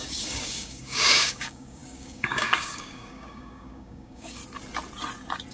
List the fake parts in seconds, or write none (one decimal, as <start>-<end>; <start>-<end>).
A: 0.0-4.4

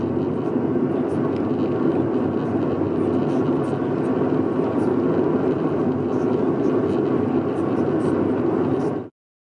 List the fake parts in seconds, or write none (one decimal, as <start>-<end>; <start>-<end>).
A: none